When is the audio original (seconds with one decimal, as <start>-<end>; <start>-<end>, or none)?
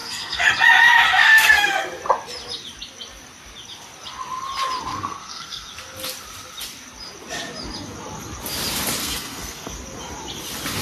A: 0.5-1.1; 1.8-4.9; 5.7-9.0; 9.7-10.8